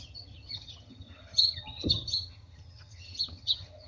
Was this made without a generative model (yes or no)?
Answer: no